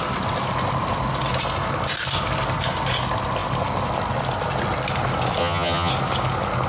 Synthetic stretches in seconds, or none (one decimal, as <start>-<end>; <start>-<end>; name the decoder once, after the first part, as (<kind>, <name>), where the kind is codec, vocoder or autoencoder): 5.4-5.9 (vocoder, HiFi-GAN)